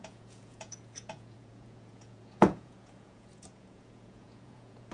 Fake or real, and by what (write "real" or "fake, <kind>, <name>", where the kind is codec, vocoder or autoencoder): fake, vocoder, Vocos